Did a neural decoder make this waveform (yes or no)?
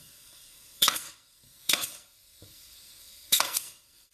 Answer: yes